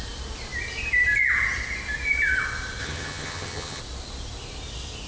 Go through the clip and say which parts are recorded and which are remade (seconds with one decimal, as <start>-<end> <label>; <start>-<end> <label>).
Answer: 0.0-2.8 recorded; 2.8-3.8 remade; 3.8-5.1 recorded